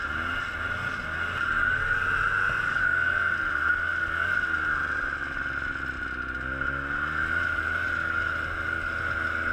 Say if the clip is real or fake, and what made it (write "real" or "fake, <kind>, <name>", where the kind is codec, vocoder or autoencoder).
real